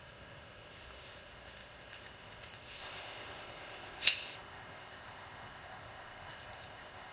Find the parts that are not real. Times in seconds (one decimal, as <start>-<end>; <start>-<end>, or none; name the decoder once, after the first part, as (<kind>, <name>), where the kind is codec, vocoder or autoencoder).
0.0-7.1 (codec, ZipCodec)